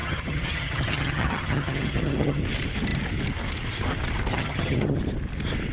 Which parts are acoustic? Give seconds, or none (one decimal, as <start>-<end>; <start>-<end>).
2.4-4.3; 5.0-5.7